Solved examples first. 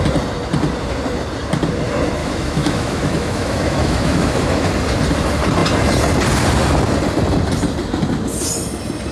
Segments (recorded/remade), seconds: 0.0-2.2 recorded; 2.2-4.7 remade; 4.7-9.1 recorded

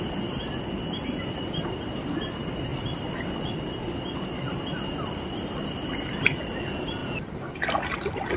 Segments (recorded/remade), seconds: 0.0-8.4 recorded

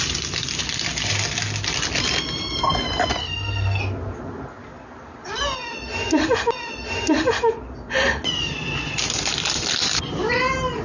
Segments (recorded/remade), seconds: 0.0-3.2 recorded; 3.2-3.8 remade; 3.8-10.8 recorded

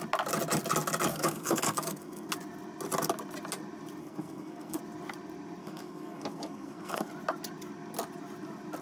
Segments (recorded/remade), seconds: 0.0-1.1 recorded; 1.1-2.3 remade; 2.3-4.0 recorded; 4.0-4.8 remade; 4.8-5.6 recorded; 5.6-7.1 remade; 7.1-8.8 recorded

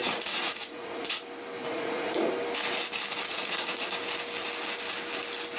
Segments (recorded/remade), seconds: 0.0-1.2 remade; 1.2-1.6 recorded; 1.6-2.3 remade; 2.3-3.3 recorded; 3.3-3.9 remade; 3.9-5.6 recorded

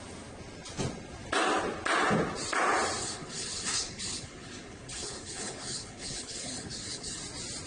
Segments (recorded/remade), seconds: 0.0-3.0 recorded; 3.0-7.2 remade; 7.2-7.7 recorded